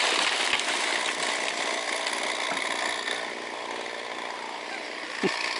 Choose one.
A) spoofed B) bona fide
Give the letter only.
B